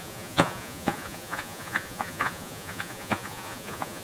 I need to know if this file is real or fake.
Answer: fake